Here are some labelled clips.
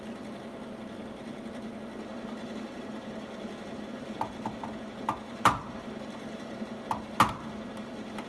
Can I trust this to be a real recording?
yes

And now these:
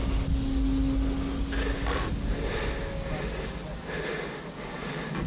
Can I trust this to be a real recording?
yes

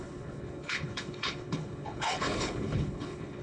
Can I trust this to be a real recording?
no